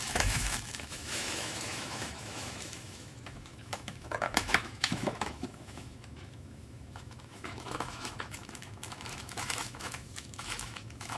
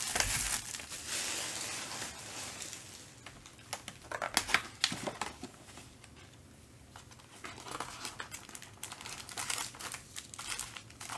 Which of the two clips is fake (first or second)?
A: first